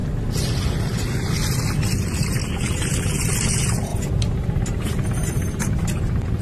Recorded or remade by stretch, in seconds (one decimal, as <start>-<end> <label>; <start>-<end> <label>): 0.0-6.4 recorded